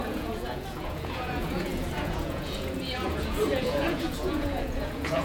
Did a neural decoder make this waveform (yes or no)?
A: yes